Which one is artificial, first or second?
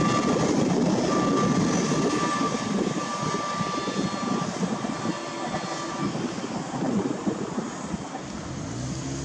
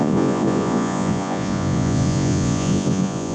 second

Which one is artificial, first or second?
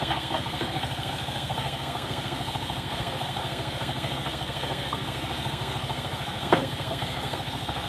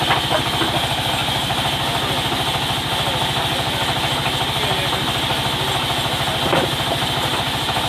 first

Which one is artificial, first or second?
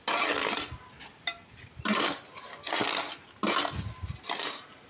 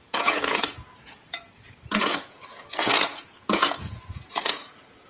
second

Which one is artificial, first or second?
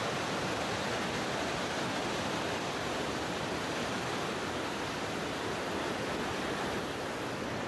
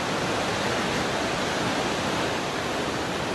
first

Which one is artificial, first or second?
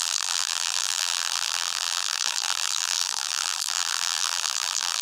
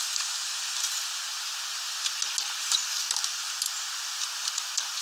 first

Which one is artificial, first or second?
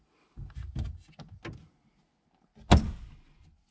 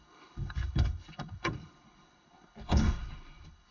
second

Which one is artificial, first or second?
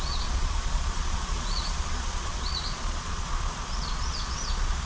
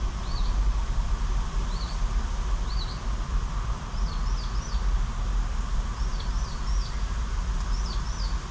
first